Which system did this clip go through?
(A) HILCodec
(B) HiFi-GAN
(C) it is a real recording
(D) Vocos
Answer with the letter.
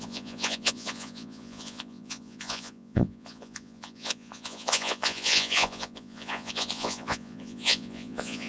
D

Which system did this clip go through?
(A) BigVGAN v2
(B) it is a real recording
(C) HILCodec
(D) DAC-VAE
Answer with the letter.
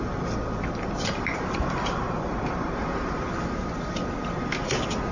A